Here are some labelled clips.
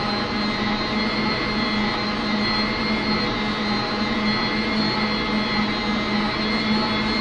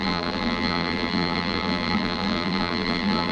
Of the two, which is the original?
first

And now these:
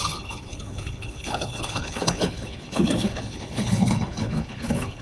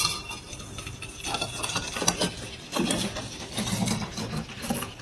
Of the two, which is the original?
second